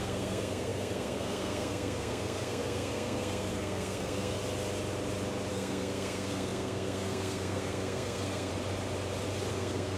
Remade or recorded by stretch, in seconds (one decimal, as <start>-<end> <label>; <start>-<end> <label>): 0.0-4.4 remade; 4.4-5.5 recorded; 5.5-8.5 remade; 8.5-9.5 recorded; 9.5-10.0 remade